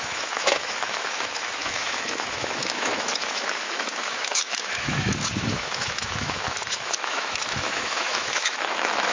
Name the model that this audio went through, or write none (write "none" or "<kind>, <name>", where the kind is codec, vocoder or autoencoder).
autoencoder, DAC-VAE